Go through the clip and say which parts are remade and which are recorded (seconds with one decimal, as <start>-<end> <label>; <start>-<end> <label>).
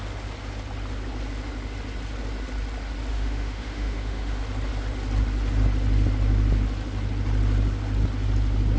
0.0-3.1 recorded; 3.1-4.4 remade; 4.4-8.8 recorded